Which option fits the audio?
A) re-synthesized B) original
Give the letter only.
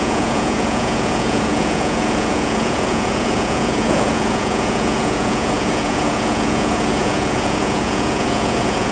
A